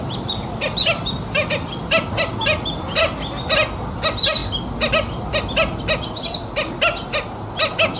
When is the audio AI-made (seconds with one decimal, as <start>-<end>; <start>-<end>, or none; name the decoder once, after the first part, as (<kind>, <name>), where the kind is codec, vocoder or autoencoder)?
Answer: none